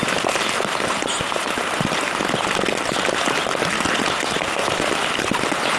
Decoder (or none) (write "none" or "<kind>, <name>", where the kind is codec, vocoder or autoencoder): none